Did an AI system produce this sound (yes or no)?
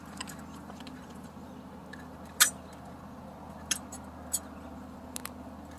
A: no